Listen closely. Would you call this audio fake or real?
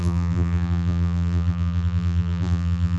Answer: fake